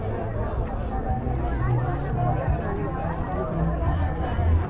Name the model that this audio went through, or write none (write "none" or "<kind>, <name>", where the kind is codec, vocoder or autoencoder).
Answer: none